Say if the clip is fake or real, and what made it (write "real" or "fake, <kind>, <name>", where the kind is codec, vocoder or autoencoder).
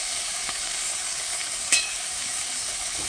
fake, codec, DAC